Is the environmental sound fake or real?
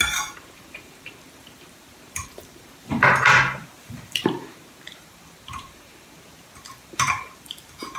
fake